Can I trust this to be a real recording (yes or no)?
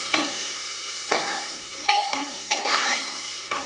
no